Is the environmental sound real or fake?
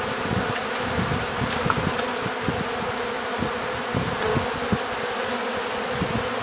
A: real